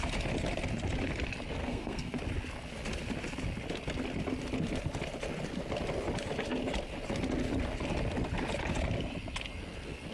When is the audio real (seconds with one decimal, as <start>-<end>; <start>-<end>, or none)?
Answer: 0.0-1.6; 2.2-10.1